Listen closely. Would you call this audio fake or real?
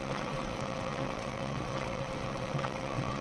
fake